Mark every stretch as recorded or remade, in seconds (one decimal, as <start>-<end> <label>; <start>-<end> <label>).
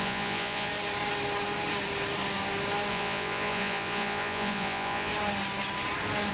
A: 0.0-0.7 remade; 0.7-2.9 recorded; 2.9-5.1 remade; 5.1-6.3 recorded